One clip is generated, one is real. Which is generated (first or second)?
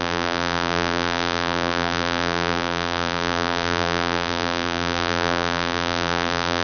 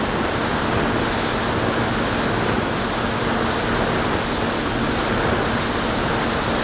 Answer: first